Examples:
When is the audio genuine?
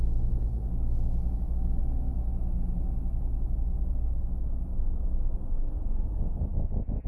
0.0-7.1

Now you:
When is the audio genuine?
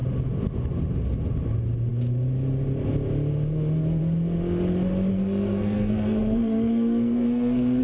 0.0-5.1